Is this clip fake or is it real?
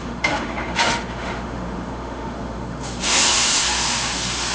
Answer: fake